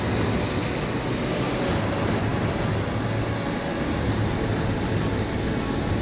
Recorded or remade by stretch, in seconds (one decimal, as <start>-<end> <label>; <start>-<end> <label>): 0.0-6.0 recorded